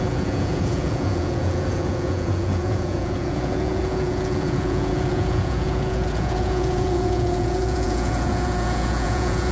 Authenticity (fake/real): fake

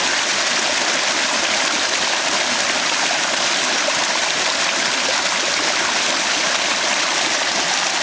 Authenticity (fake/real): real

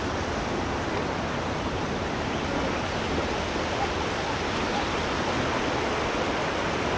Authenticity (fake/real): real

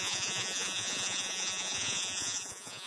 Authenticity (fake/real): fake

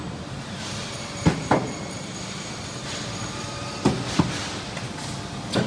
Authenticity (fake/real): real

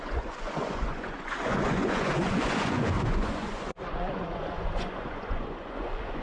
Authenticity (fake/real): fake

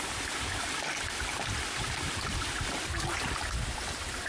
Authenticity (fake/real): real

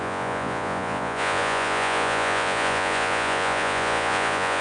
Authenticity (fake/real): fake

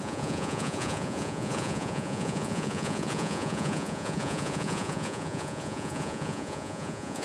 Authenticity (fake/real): fake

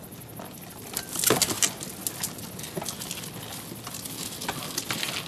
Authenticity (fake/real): real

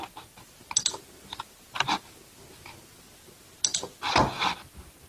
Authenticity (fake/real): real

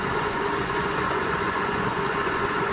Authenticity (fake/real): fake